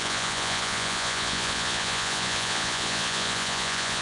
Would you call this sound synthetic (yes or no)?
yes